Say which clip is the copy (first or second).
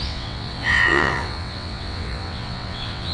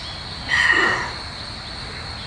first